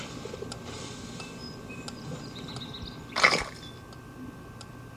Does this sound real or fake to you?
real